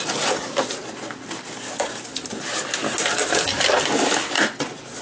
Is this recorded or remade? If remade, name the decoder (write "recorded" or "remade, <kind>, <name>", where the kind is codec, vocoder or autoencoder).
recorded